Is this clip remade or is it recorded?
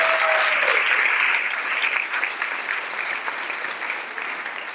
recorded